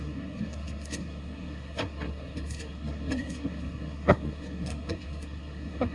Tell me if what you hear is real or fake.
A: fake